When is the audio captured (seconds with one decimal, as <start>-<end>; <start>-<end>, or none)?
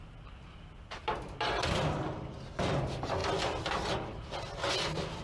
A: 0.0-5.2